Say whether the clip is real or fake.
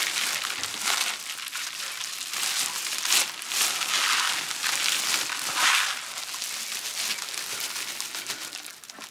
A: real